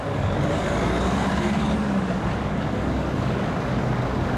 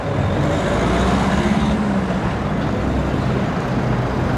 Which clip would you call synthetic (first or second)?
first